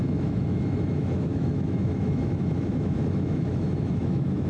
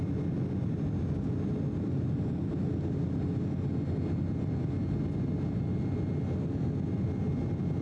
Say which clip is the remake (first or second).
first